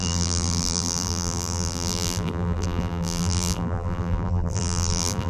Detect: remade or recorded remade